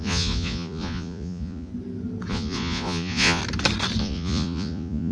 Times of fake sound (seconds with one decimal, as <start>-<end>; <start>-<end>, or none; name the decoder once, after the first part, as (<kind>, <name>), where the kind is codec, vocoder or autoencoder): 0.0-1.7 (vocoder, Vocos); 2.3-3.4; 4.0-5.1